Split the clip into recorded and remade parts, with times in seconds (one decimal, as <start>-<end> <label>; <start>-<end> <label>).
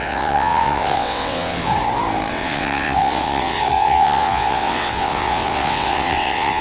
0.0-1.7 remade; 1.7-2.3 recorded; 2.3-6.6 remade